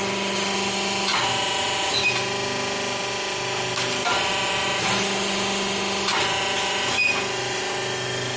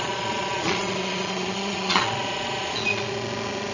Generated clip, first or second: second